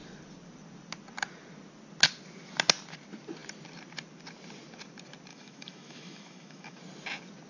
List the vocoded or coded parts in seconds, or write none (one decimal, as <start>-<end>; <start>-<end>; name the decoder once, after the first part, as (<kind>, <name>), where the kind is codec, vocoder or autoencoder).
5.3-6.8 (autoencoder, DAC-VAE)